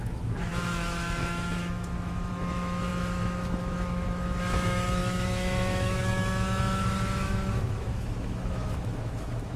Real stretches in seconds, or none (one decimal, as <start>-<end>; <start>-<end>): none